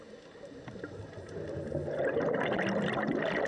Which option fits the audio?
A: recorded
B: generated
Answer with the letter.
A